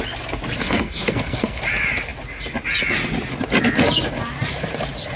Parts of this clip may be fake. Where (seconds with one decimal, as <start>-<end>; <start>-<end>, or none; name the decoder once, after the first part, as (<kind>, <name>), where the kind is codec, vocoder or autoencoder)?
0.6-1.6 (codec, SNAC)

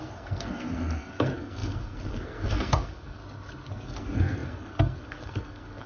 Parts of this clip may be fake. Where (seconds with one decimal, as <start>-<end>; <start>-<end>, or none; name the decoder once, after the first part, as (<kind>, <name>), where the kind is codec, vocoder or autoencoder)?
0.0-3.2 (codec, SNAC); 3.7-5.9

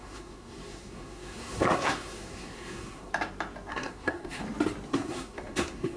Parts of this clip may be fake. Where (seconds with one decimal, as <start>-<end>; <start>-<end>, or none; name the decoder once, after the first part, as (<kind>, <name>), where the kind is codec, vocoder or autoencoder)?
0.0-3.1 (codec, SNAC); 3.7-4.4; 4.9-6.0

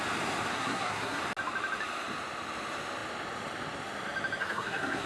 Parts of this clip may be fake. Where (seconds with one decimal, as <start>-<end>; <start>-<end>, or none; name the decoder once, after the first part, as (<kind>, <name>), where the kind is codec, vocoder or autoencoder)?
0.5-1.2 (codec, SNAC); 4.4-5.1